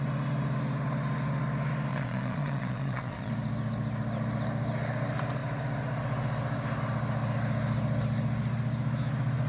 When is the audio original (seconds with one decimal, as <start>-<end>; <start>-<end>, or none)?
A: 0.0-1.9; 3.3-9.5